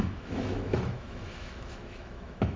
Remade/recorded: remade